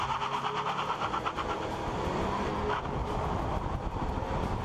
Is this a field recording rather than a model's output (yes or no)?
yes